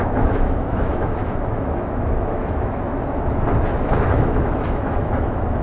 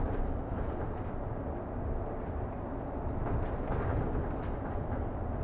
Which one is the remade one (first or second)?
first